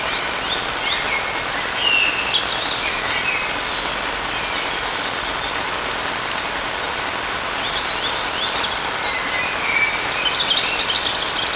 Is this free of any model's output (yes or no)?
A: yes